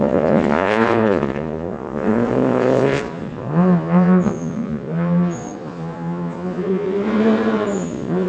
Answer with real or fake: fake